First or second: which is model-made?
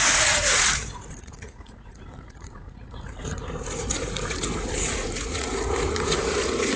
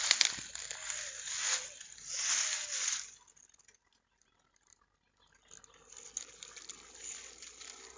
first